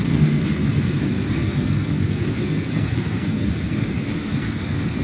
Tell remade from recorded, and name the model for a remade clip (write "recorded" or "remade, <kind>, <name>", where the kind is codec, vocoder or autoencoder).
remade, codec, SNAC